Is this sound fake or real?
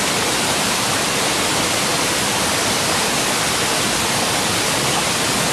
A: real